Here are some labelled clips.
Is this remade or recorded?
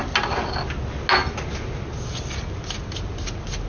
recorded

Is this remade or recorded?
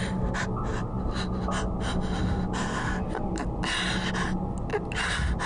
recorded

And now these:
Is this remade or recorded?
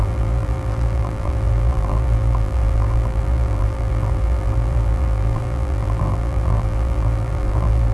remade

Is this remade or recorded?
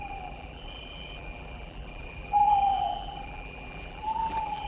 remade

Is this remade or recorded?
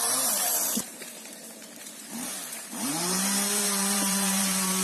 remade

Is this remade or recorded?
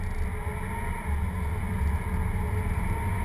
recorded